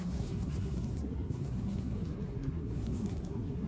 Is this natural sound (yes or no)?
no